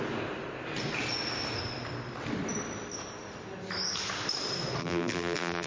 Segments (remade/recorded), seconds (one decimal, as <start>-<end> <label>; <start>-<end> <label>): 0.0-4.8 recorded; 4.8-5.7 remade